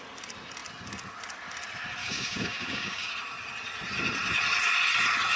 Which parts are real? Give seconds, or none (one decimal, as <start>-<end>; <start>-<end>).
0.0-2.0; 3.1-5.4